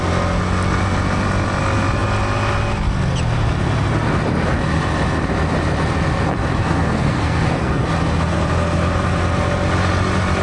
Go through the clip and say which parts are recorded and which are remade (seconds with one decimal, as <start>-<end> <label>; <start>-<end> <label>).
0.0-6.6 recorded; 6.6-7.8 remade; 7.8-10.4 recorded

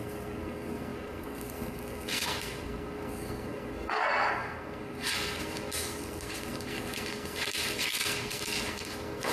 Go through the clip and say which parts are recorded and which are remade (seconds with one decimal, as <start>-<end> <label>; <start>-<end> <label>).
0.0-9.3 remade

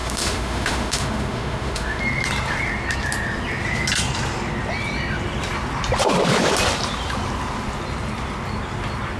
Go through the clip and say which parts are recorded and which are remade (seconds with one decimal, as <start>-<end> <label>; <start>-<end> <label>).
0.0-2.0 remade; 2.0-9.2 recorded

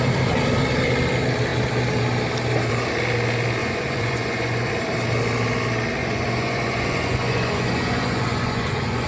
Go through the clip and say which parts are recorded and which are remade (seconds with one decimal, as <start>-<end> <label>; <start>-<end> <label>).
0.0-3.6 recorded; 3.6-4.7 remade; 4.7-6.0 recorded; 6.0-9.1 remade

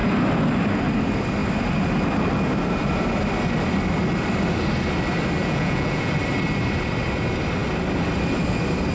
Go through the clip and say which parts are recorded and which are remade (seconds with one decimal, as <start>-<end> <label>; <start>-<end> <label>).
0.0-5.4 recorded; 5.4-6.1 remade; 6.1-8.9 recorded